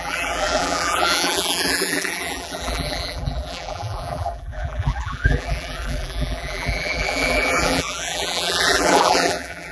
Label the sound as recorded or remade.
remade